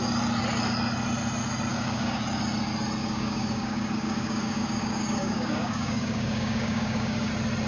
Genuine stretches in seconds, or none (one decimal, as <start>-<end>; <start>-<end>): 0.0-1.7; 2.2-3.0; 7.3-7.7